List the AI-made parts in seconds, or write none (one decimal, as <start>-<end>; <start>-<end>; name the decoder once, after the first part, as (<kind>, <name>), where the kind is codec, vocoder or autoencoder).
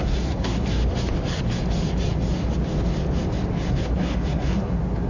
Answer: 0.0-0.8 (codec, SNAC); 3.7-5.1